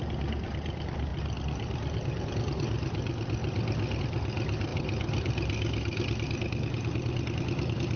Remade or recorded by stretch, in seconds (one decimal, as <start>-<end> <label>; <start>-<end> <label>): 0.0-8.0 recorded